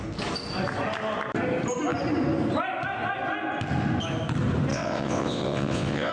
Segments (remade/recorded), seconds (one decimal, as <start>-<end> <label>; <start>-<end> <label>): 0.0-4.7 recorded; 4.7-6.1 remade